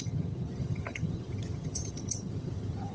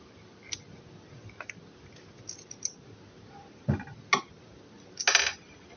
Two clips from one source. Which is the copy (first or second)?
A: first